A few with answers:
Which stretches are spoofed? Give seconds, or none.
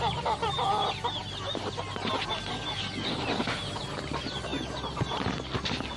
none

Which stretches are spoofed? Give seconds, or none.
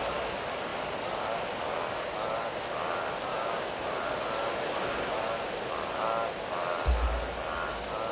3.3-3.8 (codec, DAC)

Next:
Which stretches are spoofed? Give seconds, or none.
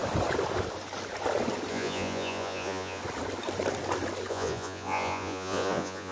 1.7-3.0 (vocoder, Vocos); 4.3-6.1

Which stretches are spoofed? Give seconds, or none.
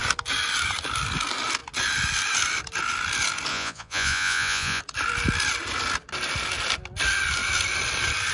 3.5-4.8 (vocoder, Vocos)